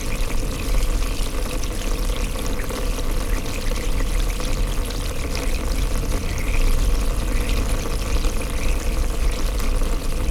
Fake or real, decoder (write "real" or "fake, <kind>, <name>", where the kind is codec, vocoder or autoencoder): real